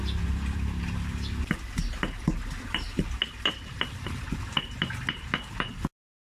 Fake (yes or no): no